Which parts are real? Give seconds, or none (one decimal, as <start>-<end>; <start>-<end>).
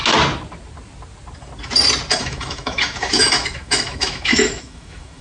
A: 0.0-2.2